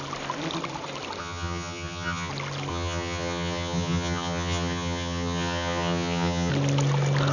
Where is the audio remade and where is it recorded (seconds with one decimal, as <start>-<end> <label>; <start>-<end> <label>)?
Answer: 0.0-1.2 recorded; 1.2-2.3 remade; 2.3-2.7 recorded; 2.7-6.5 remade; 6.5-7.3 recorded